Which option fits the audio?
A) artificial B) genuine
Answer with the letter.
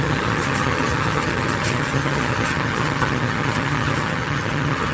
A